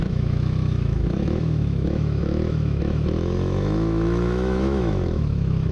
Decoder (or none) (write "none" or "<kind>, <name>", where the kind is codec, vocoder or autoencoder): autoencoder, DAC-VAE